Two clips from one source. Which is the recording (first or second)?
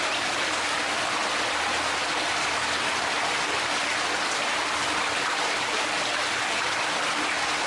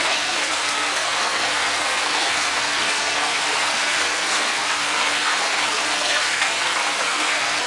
first